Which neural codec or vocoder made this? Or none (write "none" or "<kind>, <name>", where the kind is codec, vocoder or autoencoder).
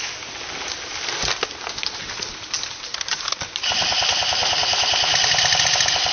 none